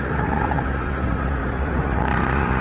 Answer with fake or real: fake